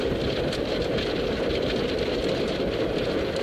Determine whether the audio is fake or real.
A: fake